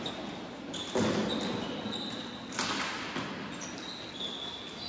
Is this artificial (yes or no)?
no